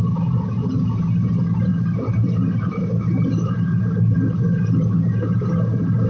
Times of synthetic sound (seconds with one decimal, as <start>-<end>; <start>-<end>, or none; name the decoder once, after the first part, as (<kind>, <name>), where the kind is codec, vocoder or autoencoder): none